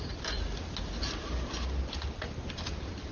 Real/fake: real